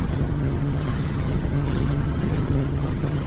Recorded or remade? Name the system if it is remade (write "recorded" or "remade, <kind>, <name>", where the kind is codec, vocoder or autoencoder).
remade, vocoder, HiFi-GAN